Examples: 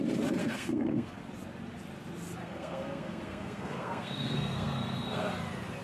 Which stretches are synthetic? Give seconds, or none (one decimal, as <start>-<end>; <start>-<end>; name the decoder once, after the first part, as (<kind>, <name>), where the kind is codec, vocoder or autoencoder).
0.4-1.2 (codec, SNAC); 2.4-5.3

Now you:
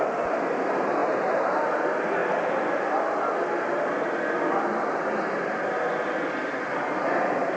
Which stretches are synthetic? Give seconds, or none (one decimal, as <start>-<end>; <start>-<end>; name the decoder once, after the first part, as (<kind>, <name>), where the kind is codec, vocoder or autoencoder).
none

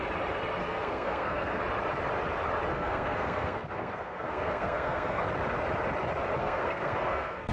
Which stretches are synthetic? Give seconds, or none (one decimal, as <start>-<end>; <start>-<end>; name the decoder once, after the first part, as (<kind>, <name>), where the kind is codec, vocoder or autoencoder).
0.6-1.6 (codec, SNAC); 2.7-5.2; 6.4-7.5

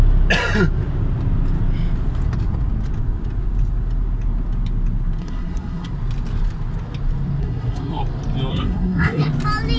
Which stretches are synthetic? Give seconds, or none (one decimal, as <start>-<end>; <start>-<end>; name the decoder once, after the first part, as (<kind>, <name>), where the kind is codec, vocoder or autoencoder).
5.2-5.9 (codec, SNAC); 7.4-8.0; 8.5-9.3

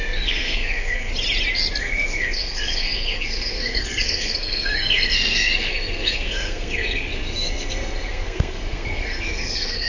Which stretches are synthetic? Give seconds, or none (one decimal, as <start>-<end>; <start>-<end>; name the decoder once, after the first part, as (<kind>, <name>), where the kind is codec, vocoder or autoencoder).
0.0-1.1 (codec, SNAC); 1.8-9.9

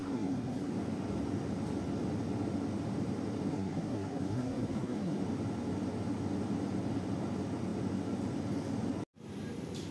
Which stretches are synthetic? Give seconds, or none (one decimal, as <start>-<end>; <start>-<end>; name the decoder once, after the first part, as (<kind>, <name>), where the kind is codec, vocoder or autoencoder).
0.0-0.7 (codec, SNAC); 3.5-5.2